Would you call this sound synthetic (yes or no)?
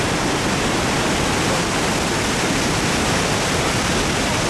no